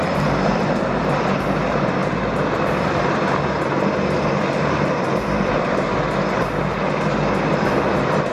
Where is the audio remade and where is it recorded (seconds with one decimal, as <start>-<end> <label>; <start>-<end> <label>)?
0.0-8.3 recorded